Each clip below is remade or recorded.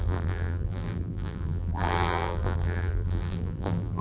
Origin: remade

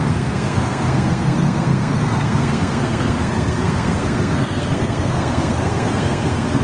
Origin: remade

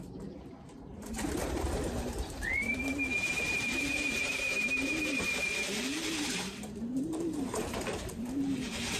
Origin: remade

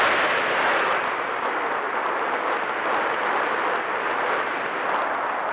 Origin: recorded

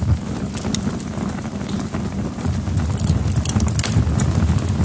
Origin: recorded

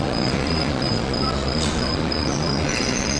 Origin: remade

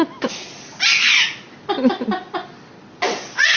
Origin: recorded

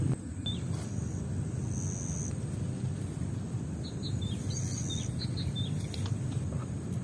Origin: recorded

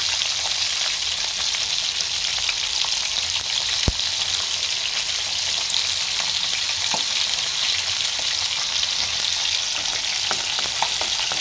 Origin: recorded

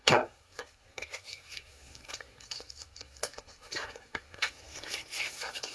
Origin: remade